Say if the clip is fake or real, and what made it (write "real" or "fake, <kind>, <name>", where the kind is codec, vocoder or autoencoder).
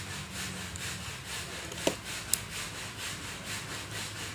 real